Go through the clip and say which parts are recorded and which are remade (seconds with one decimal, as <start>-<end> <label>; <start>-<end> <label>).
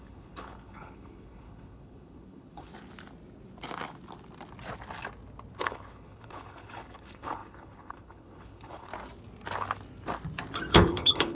0.0-2.7 remade; 2.7-5.6 recorded; 5.6-8.9 remade; 8.9-10.7 recorded; 10.7-11.3 remade